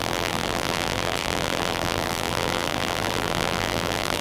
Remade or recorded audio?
remade